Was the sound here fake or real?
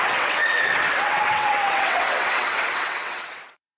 fake